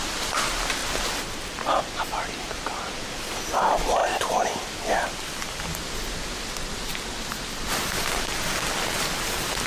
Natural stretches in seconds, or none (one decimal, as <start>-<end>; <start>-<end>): 0.0-4.0; 5.6-9.7